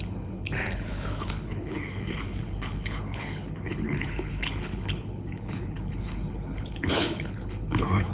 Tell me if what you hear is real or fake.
fake